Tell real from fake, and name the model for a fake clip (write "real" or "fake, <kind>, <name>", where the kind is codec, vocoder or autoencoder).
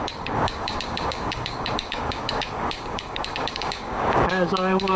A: fake, codec, DAC